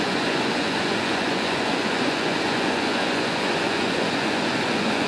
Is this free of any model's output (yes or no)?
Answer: no